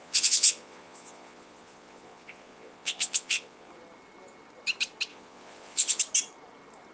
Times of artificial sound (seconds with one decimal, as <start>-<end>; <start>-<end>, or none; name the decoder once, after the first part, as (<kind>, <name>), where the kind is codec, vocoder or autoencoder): 0.0-3.7 (vocoder, Vocos); 5.1-6.0